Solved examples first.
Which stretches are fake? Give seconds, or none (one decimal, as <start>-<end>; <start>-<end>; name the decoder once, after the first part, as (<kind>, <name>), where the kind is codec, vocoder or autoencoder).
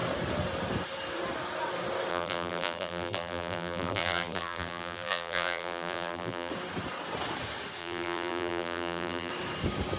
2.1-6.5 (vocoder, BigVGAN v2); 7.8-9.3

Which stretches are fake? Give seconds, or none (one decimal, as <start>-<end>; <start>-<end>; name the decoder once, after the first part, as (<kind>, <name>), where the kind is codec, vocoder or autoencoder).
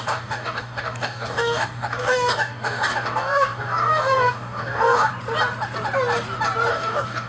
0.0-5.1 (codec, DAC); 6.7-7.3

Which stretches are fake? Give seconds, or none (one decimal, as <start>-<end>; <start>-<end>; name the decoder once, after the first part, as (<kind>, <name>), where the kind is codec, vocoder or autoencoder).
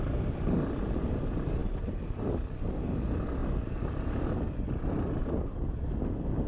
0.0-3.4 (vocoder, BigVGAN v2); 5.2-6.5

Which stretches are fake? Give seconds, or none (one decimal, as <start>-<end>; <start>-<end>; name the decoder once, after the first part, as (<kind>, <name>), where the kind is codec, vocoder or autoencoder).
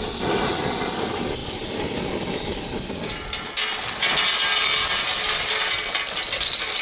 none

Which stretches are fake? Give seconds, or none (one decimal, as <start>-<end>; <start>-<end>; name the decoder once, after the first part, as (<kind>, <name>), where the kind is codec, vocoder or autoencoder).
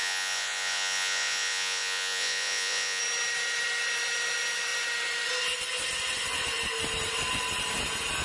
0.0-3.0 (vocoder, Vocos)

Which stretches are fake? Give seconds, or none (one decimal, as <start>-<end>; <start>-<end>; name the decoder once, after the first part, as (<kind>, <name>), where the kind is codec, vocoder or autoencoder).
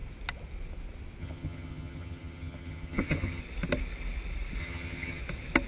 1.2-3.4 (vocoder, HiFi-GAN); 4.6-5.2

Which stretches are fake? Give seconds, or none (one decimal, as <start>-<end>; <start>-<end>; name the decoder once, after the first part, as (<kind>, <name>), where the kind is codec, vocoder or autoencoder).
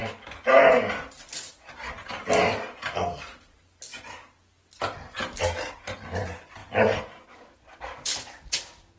6.6-8.5 (vocoder, BigVGAN v2)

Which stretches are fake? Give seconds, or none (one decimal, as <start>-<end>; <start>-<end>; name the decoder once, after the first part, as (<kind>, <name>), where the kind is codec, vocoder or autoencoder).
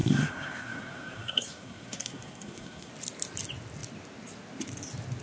0.0-2.9 (codec, SNAC)